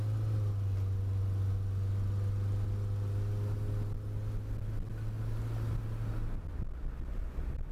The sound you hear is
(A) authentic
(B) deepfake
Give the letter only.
A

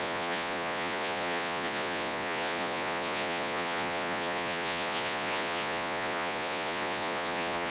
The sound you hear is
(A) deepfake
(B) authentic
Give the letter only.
A